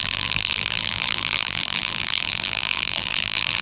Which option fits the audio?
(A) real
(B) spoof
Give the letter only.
B